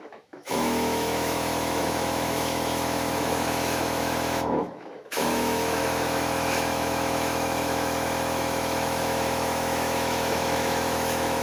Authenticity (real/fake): fake